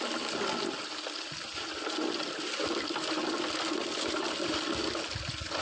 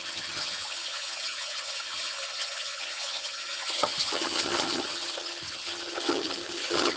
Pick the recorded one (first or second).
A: first